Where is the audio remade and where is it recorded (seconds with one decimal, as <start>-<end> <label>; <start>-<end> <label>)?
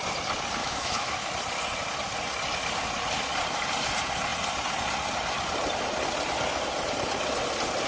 0.0-0.6 recorded; 0.6-1.3 remade; 1.3-7.9 recorded